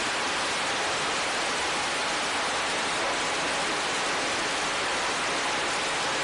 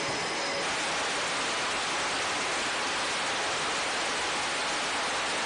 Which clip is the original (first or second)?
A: second